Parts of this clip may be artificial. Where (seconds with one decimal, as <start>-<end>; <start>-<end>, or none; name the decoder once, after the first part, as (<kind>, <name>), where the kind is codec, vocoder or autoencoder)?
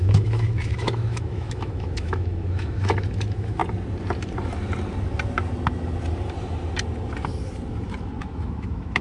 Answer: 0.0-3.6 (autoencoder, DAC-VAE); 8.2-9.0